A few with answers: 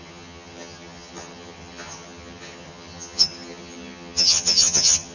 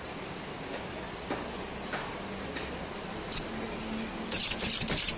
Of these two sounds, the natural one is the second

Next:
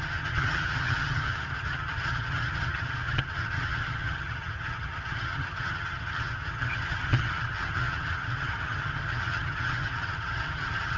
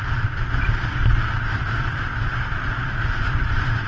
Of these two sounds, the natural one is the second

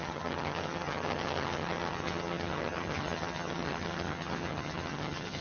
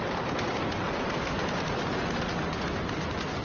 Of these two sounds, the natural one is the second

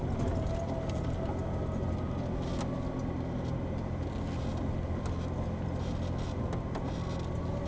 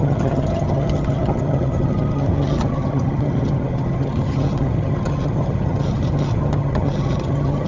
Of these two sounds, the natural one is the first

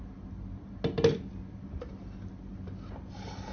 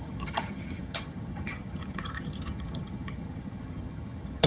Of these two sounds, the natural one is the first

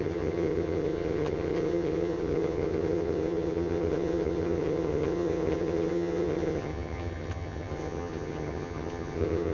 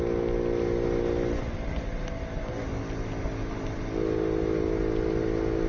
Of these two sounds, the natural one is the second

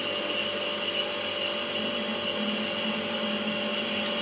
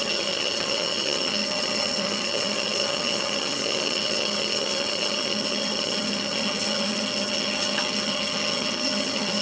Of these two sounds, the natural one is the first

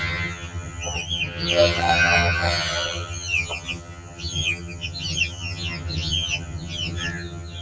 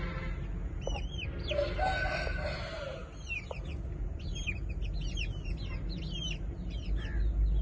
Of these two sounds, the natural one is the second